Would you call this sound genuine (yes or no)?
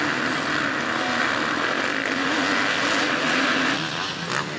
yes